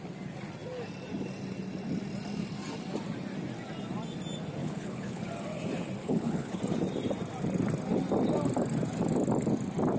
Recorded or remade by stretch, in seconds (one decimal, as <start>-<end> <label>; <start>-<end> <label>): 0.0-4.6 recorded; 4.6-5.2 remade; 5.2-6.0 recorded; 6.0-6.6 remade; 6.6-10.0 recorded